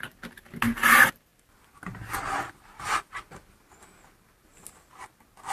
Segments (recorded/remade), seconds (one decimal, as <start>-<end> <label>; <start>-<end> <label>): 0.0-5.5 recorded